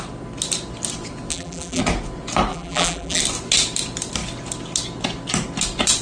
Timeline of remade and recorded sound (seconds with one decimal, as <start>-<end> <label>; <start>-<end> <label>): 0.0-1.3 recorded; 1.3-1.8 remade; 1.8-2.5 recorded; 2.5-3.2 remade; 3.2-6.0 recorded